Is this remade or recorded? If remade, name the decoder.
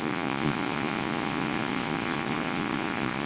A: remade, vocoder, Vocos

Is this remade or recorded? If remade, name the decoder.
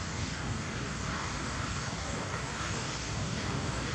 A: remade, codec, DAC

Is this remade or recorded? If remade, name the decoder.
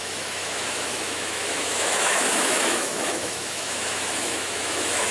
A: remade, autoencoder, DAC-VAE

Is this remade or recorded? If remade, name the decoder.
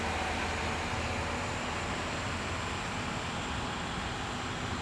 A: recorded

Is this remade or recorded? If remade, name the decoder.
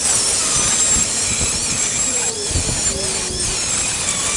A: recorded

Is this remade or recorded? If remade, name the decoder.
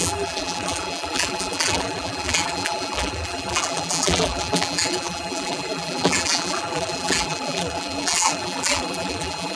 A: remade, vocoder, BigVGAN v2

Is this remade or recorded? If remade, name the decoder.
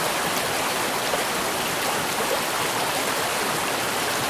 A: recorded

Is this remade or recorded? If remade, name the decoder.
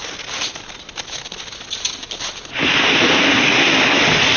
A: recorded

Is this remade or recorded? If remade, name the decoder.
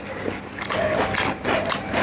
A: recorded